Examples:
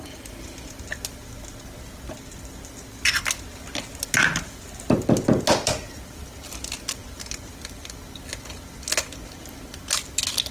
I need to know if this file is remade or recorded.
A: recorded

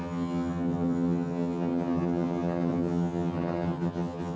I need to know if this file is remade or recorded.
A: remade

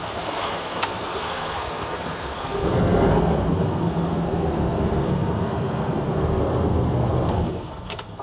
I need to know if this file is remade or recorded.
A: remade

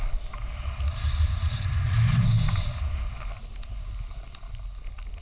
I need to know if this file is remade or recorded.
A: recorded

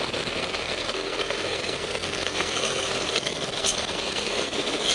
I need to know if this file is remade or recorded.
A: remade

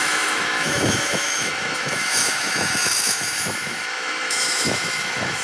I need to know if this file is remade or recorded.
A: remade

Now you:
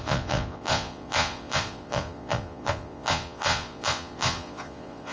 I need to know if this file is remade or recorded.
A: remade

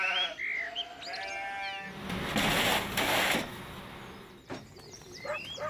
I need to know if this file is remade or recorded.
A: recorded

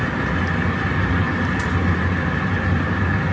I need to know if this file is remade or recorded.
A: recorded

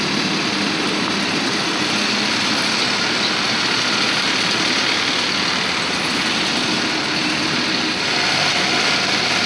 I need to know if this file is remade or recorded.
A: recorded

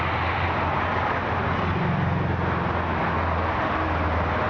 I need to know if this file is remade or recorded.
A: recorded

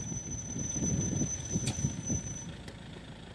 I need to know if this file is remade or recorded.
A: remade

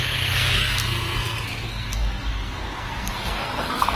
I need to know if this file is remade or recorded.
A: remade